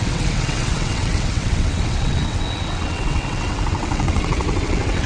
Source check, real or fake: fake